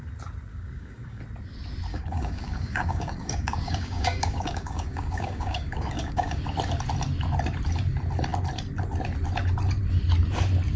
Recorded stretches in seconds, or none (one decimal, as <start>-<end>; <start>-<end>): 0.0-0.5; 1.2-1.9; 6.4-10.8